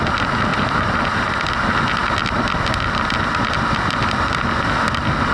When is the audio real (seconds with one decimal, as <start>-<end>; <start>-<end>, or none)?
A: 0.0-0.5; 1.3-5.3